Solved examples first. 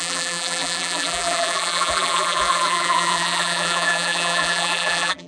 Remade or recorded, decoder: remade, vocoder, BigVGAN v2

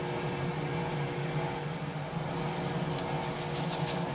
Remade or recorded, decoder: recorded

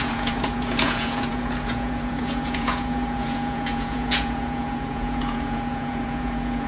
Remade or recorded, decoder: remade, vocoder, Vocos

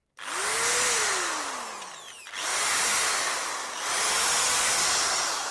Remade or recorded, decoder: recorded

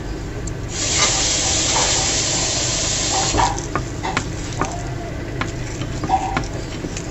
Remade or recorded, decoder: recorded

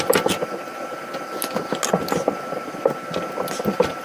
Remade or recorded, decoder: recorded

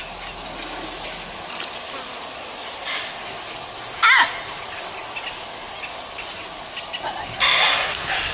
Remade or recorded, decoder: recorded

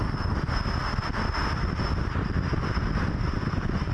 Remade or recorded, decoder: recorded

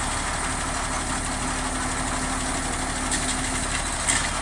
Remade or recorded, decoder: recorded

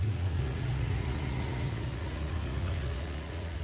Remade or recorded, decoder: remade, vocoder, Vocos